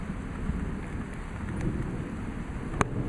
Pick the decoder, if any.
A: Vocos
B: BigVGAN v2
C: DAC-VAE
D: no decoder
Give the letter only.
D